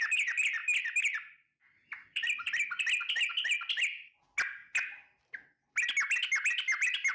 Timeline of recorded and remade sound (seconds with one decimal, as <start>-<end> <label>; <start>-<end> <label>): 0.0-7.1 recorded